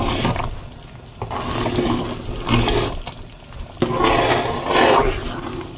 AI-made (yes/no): no